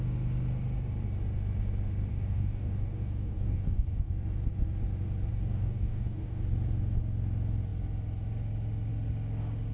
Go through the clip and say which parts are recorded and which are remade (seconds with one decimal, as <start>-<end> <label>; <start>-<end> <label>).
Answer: 0.0-2.1 recorded; 2.1-4.1 remade; 4.1-5.3 recorded; 5.3-6.4 remade; 6.4-9.7 recorded